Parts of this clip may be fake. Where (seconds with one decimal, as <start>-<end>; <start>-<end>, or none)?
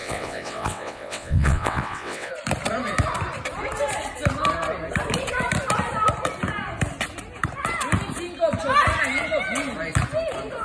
0.0-2.3